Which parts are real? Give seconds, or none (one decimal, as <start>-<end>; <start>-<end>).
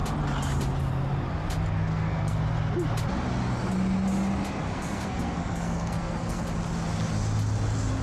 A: 0.0-1.9; 2.4-4.6; 6.4-8.0